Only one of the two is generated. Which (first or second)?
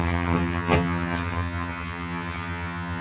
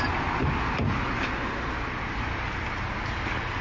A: first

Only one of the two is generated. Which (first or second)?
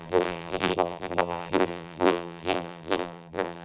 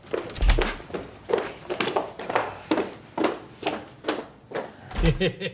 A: first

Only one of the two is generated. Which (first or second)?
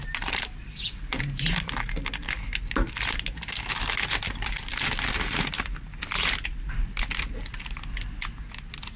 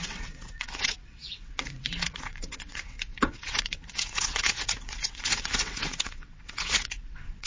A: second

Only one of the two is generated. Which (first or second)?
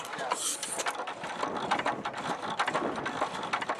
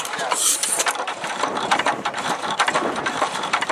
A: second